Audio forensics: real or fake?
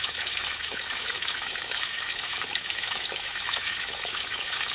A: fake